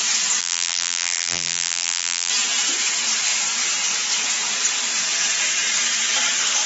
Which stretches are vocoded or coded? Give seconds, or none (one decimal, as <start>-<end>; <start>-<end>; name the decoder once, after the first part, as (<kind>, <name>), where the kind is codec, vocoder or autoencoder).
0.4-2.3 (vocoder, BigVGAN v2)